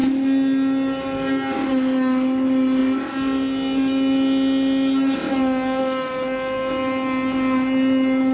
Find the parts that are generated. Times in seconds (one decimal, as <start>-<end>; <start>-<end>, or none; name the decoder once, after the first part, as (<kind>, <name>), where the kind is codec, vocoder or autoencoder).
none